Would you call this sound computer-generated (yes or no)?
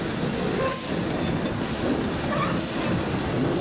no